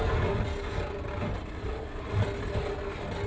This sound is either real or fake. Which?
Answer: real